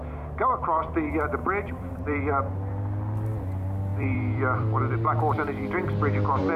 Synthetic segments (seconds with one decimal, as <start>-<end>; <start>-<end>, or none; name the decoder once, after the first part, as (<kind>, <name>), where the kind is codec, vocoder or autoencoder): 1.4-2.2 (vocoder, BigVGAN v2); 3.9-4.9